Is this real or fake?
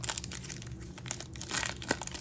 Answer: real